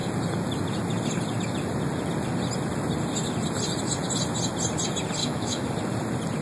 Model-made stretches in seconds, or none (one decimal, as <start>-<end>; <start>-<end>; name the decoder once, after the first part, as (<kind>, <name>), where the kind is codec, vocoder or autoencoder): 5.2-5.7 (autoencoder, DAC-VAE)